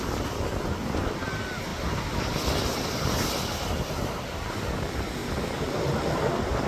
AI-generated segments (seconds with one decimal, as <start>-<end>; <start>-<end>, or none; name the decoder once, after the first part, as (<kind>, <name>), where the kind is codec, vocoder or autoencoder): none